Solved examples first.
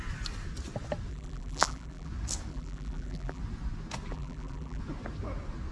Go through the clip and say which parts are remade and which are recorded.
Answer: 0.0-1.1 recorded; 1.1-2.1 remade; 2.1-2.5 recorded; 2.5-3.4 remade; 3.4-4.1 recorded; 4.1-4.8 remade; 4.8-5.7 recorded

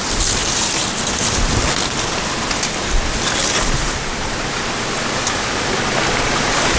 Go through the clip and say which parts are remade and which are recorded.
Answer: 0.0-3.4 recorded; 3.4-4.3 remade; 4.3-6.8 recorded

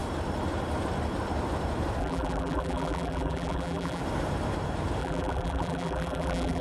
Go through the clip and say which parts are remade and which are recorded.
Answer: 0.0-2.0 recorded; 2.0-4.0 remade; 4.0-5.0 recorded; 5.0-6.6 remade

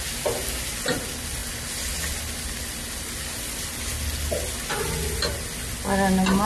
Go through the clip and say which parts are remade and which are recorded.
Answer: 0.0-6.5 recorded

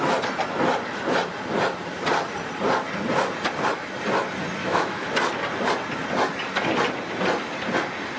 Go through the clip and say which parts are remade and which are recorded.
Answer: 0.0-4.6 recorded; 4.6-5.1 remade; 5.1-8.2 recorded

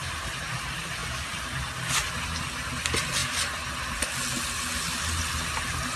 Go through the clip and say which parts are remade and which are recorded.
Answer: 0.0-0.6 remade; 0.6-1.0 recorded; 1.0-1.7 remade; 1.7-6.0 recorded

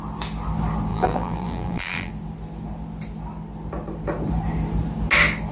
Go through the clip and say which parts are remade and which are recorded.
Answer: 0.0-0.9 recorded; 0.9-2.1 remade; 2.1-5.5 recorded